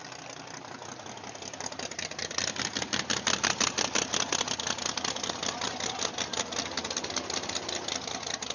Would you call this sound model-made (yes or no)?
no